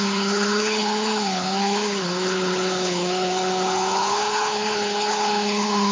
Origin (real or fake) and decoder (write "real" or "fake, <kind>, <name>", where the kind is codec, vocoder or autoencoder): fake, codec, HILCodec